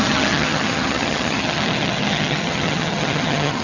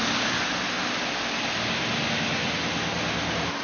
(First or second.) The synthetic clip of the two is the first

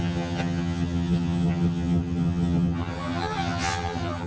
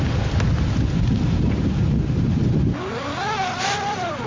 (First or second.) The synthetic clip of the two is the first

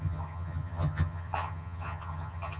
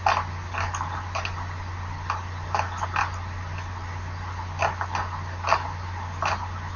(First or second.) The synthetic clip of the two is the first